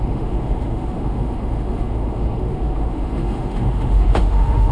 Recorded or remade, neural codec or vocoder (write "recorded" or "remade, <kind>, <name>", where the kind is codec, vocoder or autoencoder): remade, autoencoder, DAC-VAE